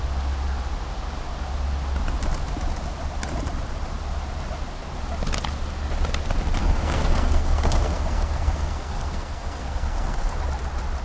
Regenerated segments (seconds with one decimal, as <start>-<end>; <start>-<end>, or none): 6.6-10.3

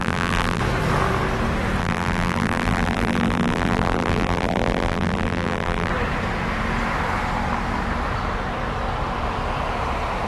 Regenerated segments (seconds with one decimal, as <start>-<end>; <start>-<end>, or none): 0.0-0.6; 1.8-5.9

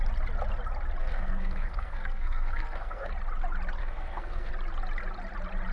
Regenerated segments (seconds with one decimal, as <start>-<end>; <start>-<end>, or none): 1.0-3.1; 3.8-4.5

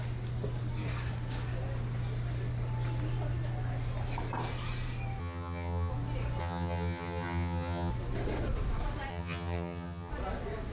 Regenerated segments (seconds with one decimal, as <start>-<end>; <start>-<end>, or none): 5.2-5.9; 6.4-7.9; 9.1-10.1

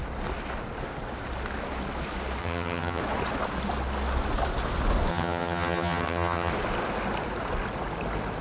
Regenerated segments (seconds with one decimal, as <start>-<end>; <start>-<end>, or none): 2.4-3.0; 5.1-6.5